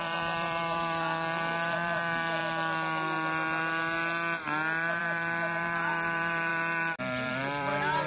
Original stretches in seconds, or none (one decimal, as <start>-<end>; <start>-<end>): 2.4-5.0